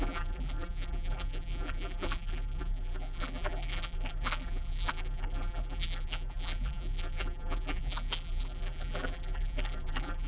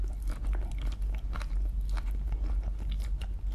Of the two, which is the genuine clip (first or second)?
second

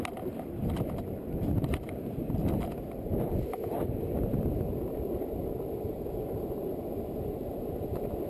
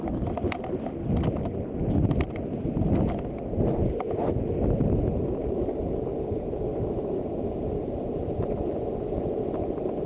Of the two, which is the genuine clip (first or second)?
second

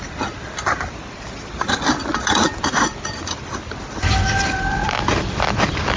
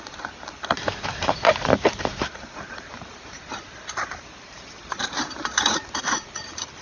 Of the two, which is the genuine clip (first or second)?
first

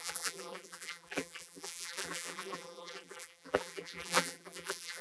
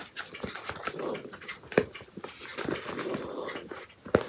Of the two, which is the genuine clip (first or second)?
second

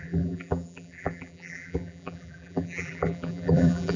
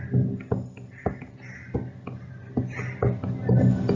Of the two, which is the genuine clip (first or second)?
second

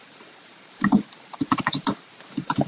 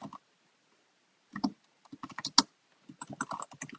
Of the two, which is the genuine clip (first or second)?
second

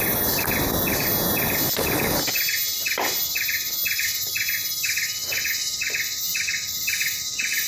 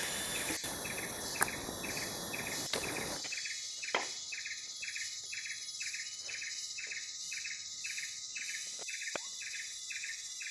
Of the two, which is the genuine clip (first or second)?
first